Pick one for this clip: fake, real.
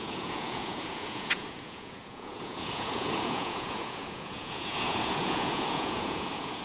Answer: fake